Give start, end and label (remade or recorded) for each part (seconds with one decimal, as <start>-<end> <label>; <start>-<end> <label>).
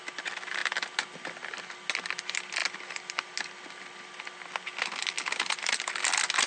0.0-6.5 recorded